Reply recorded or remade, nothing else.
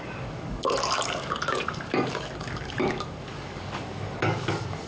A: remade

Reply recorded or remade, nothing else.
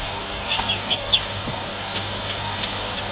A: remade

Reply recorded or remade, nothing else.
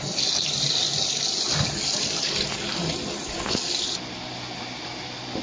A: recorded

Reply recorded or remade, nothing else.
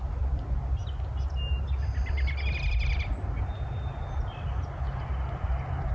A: recorded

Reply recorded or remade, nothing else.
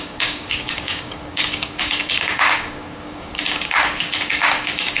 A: remade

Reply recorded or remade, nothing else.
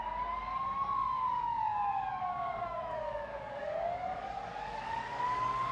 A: remade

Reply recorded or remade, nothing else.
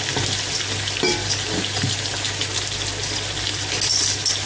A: recorded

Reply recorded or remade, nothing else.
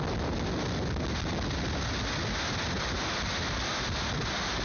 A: recorded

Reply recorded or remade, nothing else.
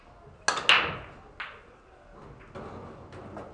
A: recorded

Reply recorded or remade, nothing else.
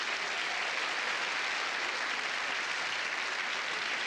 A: recorded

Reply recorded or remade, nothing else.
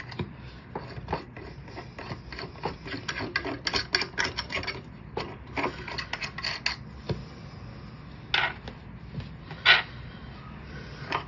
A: recorded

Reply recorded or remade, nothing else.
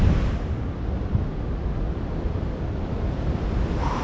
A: recorded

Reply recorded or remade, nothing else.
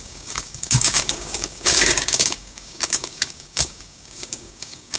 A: remade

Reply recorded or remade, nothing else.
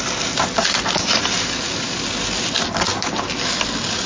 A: recorded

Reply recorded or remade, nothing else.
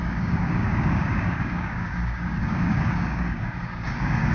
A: remade